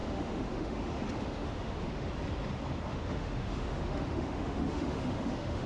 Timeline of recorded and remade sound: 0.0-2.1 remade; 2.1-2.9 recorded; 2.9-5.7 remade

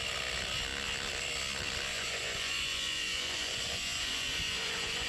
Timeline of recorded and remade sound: 0.0-1.9 recorded; 1.9-5.1 remade